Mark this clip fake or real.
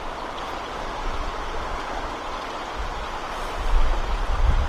real